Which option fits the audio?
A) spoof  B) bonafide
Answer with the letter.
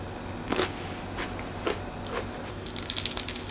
B